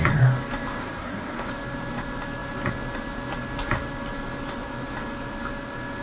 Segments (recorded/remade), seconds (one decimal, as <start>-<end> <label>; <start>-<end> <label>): 0.0-0.8 recorded; 0.8-1.5 remade; 1.5-6.0 recorded